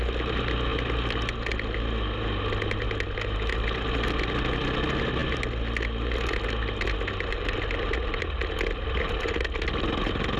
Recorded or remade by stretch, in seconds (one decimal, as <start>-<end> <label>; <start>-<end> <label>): 0.0-10.4 recorded